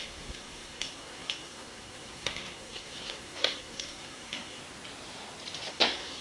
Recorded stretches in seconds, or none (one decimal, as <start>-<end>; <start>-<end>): 4.6-5.7